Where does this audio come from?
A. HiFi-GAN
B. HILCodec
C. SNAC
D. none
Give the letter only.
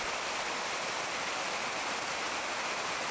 D